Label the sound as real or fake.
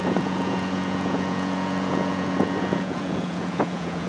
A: fake